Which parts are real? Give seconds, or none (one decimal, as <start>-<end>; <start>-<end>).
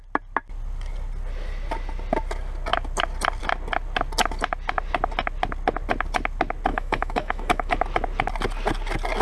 0.0-6.7; 7.7-9.2